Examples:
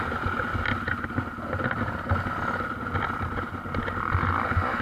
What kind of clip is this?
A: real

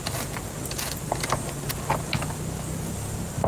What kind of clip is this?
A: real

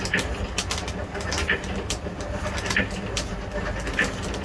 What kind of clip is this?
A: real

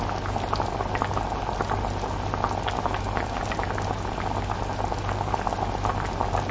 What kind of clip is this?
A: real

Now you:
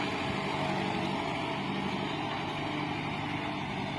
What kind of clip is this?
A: real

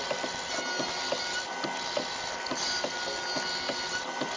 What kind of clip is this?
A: real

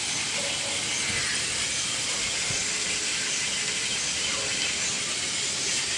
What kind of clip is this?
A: real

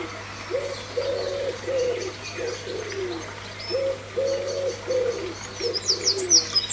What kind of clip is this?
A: real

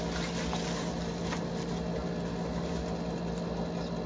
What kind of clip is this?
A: real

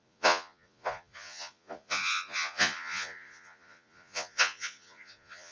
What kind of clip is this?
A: fake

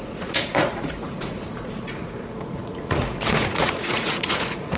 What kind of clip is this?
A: fake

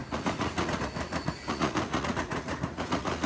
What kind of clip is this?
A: fake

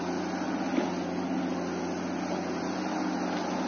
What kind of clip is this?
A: real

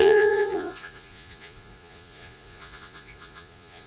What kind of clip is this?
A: fake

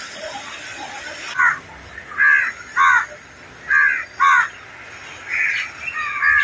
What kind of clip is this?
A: real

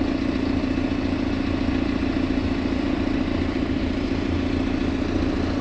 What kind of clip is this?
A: real